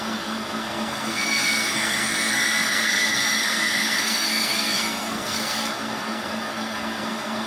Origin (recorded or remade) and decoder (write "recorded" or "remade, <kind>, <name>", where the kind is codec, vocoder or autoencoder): remade, codec, SNAC